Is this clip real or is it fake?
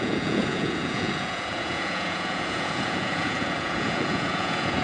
fake